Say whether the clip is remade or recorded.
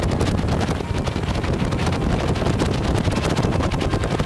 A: recorded